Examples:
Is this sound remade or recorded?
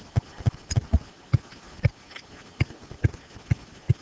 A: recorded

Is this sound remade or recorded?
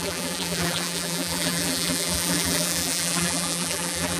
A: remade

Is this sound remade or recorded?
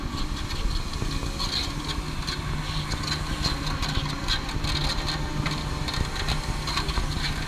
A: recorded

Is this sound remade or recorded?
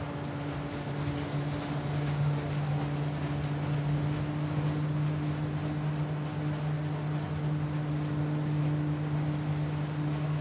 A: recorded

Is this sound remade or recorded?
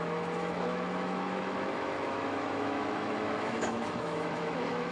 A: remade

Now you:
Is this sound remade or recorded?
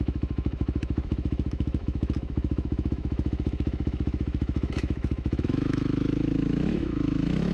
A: remade